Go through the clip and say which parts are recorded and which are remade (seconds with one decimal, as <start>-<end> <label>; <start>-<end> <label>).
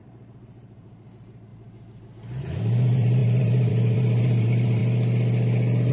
0.0-1.5 remade; 1.5-2.6 recorded; 2.6-4.8 remade; 4.8-5.9 recorded